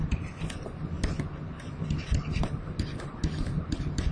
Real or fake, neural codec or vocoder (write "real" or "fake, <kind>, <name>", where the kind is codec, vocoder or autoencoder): real